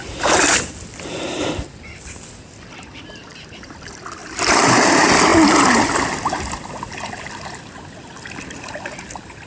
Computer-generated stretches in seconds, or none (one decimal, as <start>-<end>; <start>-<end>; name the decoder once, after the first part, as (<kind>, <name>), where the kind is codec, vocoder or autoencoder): 0.0-5.3 (vocoder, BigVGAN v2); 9.1-9.5